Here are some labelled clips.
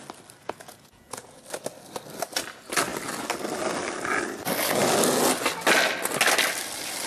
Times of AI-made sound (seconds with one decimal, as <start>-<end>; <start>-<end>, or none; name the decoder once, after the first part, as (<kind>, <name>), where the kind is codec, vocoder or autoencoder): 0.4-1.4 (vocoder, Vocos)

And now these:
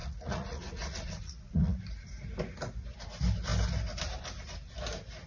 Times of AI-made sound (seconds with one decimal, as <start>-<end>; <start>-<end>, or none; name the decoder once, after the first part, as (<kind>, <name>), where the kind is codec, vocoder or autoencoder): 0.0-1.9 (vocoder, Vocos)

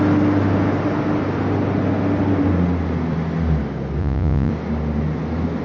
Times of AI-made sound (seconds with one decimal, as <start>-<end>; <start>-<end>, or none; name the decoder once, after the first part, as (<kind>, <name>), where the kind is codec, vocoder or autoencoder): 4.0-4.5 (vocoder, Vocos)

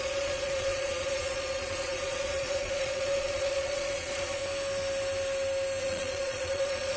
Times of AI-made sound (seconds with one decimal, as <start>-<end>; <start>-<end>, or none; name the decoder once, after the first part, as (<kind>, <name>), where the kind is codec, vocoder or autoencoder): 0.0-4.4 (vocoder, Vocos); 5.8-7.0